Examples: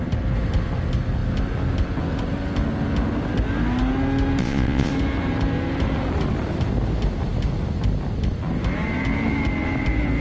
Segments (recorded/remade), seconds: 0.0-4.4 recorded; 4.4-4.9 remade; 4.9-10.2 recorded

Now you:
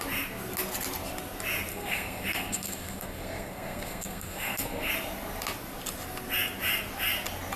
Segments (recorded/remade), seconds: 0.0-1.7 recorded; 1.7-4.9 remade; 4.9-7.6 recorded

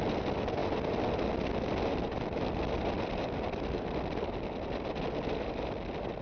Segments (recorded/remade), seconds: 0.0-6.2 recorded